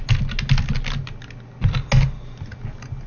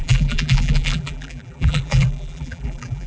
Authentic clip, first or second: first